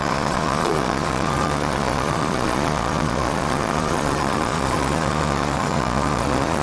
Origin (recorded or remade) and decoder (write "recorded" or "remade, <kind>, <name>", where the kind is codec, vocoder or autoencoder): remade, vocoder, Vocos